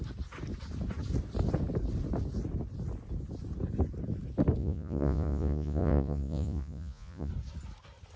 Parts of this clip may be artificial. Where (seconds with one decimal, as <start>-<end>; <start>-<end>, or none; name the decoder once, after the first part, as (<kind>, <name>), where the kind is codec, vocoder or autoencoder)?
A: 4.6-7.3 (vocoder, Vocos)